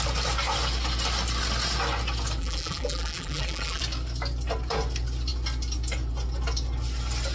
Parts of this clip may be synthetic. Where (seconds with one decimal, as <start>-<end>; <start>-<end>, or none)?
2.4-3.8